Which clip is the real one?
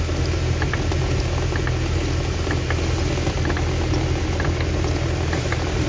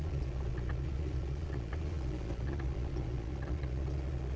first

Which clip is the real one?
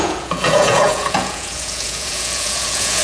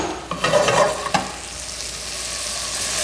second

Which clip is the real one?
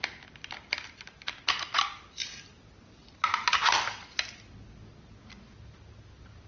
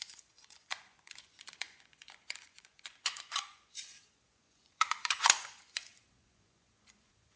first